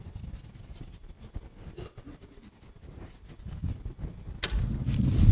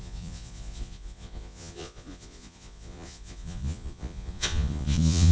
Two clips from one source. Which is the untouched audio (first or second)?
first